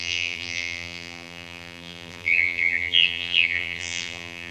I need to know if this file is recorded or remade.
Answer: remade